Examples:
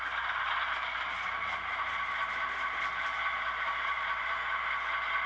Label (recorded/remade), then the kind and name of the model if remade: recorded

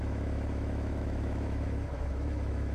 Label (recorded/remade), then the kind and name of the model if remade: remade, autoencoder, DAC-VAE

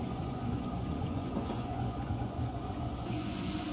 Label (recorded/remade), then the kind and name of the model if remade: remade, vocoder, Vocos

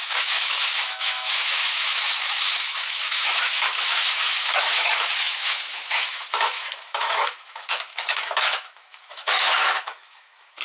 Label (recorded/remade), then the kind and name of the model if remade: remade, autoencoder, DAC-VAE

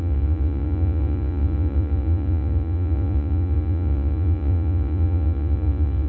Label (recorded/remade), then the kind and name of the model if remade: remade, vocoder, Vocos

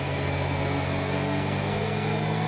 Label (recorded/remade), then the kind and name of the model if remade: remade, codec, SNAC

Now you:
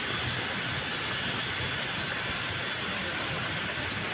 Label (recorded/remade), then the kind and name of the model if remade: recorded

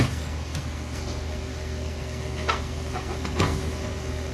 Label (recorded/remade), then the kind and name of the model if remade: remade, codec, SNAC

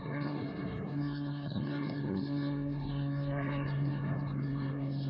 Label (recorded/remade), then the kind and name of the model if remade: remade, codec, SNAC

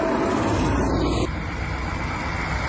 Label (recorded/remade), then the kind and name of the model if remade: recorded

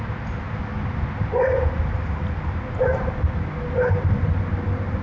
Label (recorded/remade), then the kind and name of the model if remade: recorded